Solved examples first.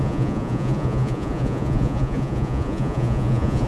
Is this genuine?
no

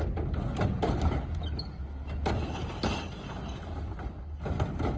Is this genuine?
yes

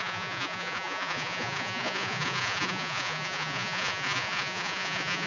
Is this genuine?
no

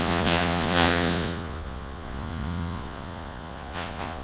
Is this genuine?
no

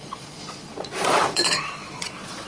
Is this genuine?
no